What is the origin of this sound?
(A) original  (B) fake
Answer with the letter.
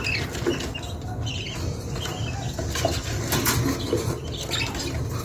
A